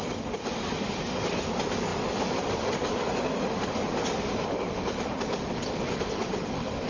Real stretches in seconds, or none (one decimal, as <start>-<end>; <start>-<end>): 0.0-6.9